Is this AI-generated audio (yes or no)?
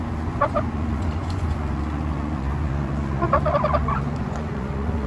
yes